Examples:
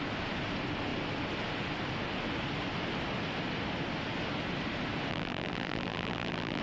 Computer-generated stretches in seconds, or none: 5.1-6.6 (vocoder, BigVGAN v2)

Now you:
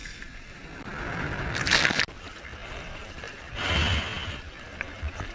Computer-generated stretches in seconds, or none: 0.0-3.8 (vocoder, BigVGAN v2); 4.4-5.3

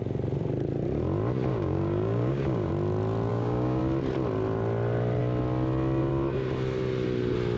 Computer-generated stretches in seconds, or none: 1.5-2.7 (codec, DAC); 3.3-3.8